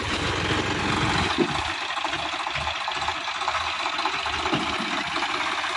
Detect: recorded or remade recorded